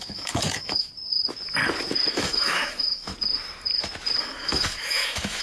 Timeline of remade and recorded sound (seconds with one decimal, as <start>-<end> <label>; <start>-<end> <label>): 0.0-0.9 remade; 0.9-2.1 recorded; 2.1-3.1 remade; 3.1-4.2 recorded; 4.2-5.4 remade